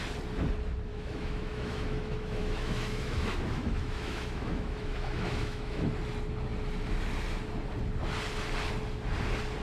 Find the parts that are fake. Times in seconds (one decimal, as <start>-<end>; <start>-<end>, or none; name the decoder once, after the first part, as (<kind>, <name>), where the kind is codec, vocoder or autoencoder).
0.9-5.9 (autoencoder, DAC-VAE)